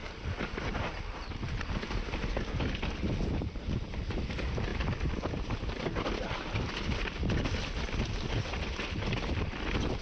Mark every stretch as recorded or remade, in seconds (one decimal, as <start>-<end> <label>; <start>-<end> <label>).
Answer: 0.0-3.3 recorded; 3.3-10.0 remade